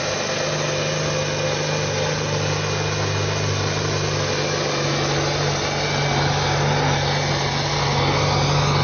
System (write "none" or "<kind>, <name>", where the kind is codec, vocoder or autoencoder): none